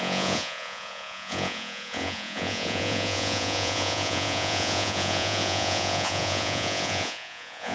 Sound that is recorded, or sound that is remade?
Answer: remade